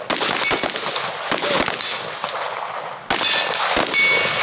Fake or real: real